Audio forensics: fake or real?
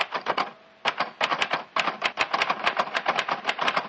real